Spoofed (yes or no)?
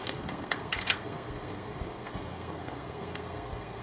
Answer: yes